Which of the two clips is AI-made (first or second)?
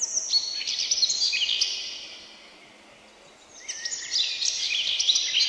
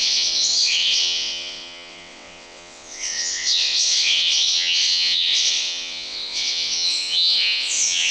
second